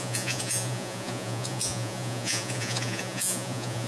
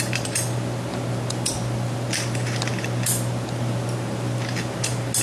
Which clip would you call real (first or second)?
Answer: second